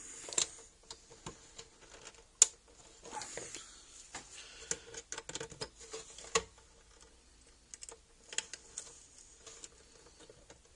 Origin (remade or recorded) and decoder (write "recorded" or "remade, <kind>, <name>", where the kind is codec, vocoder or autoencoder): recorded